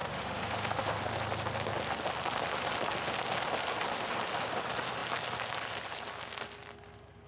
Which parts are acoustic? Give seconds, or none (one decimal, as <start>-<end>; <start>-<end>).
1.0-7.3